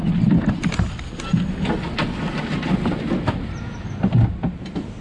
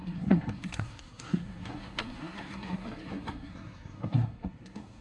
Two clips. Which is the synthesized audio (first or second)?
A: second